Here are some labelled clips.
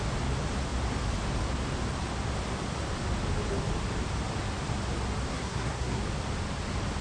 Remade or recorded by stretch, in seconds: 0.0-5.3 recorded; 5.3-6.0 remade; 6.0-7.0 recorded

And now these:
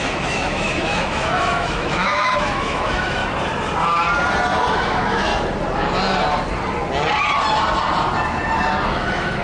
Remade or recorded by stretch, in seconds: 0.0-3.2 remade; 3.2-4.7 recorded; 4.7-5.3 remade; 5.3-8.9 recorded; 8.9-9.4 remade